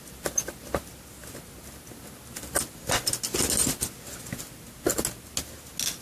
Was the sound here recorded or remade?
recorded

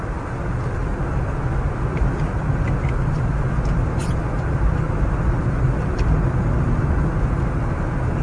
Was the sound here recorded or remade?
recorded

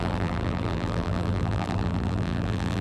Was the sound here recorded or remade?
remade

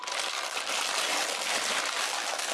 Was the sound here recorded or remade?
recorded